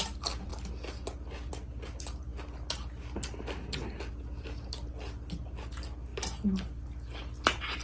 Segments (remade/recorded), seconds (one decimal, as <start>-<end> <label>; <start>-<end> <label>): 0.0-7.8 recorded